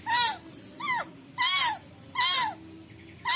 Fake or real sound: real